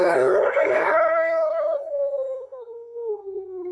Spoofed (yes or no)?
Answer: yes